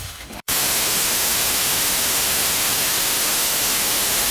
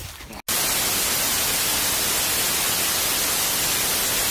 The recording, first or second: second